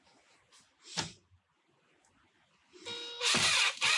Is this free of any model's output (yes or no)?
yes